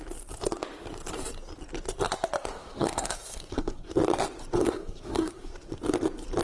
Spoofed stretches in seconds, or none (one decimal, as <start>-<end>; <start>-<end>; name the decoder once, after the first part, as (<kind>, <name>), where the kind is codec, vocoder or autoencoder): 2.5-3.9 (codec, SNAC); 4.6-5.5